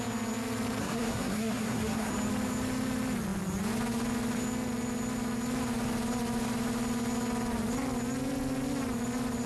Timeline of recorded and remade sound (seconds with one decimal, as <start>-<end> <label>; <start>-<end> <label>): 0.0-0.8 recorded; 0.8-2.1 remade; 2.1-9.5 recorded